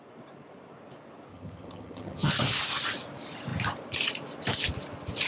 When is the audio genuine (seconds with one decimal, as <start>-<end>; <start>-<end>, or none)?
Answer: 0.0-1.3; 2.3-5.3